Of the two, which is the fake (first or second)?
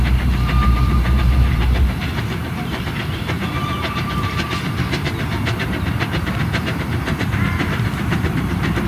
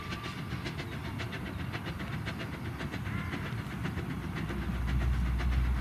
first